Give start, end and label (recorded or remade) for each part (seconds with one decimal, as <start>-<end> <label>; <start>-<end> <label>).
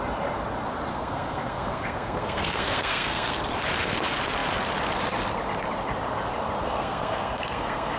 0.0-0.9 recorded; 0.9-3.4 remade; 3.4-6.6 recorded; 6.6-8.0 remade